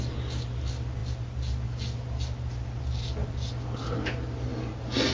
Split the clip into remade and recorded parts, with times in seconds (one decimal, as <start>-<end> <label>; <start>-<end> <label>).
0.0-5.1 recorded